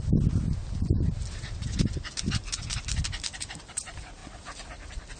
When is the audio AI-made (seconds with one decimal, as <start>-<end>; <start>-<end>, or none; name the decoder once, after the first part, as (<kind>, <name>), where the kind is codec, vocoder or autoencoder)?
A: none